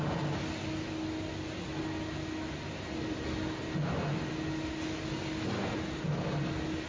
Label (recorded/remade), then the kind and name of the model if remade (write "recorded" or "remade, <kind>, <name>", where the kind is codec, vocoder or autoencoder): recorded